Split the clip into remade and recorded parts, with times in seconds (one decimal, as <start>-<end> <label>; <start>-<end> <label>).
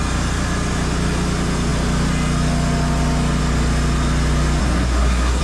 0.0-4.6 recorded; 4.6-5.4 remade